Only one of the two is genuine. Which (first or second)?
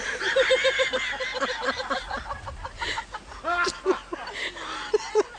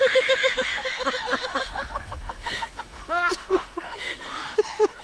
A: first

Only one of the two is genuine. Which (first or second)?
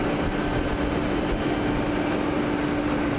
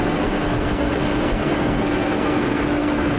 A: first